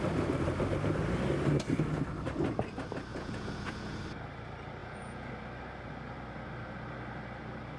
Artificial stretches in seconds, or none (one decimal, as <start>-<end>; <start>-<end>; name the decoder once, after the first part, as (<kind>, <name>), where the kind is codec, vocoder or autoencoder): 3.1-4.0 (vocoder, Vocos); 4.8-5.3